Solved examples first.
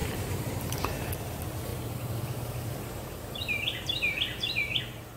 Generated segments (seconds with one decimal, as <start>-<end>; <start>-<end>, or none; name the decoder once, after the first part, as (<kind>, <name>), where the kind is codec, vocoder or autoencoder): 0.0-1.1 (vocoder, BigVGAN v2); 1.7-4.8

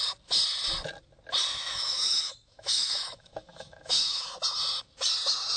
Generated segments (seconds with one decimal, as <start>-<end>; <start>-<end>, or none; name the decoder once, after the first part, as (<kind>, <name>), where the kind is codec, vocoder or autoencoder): 1.5-4.4 (autoencoder, DAC-VAE)

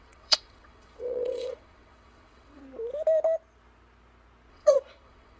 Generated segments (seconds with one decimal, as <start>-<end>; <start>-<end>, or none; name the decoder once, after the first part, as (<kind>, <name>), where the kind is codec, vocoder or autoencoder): 0.0-2.6 (vocoder, WaveNeXt); 4.5-5.4

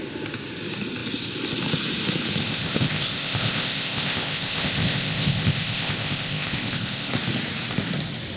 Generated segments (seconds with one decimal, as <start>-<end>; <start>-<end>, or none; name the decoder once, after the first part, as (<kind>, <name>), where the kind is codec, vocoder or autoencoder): 2.4-7.1 (codec, ZipCodec)

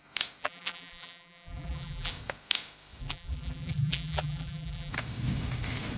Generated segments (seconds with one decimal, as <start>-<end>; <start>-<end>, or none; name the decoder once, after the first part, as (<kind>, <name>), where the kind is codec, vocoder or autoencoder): 0.4-2.1 (vocoder, BigVGAN v2); 3.0-4.9